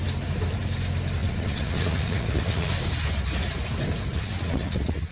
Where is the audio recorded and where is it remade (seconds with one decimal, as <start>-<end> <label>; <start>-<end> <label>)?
0.0-1.2 recorded; 1.2-2.7 remade; 2.7-4.1 recorded; 4.1-5.1 remade